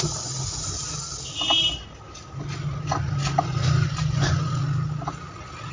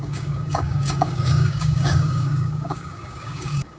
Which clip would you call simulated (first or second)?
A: second